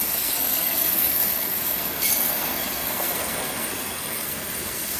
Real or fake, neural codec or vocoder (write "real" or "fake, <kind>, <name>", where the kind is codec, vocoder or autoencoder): fake, codec, SNAC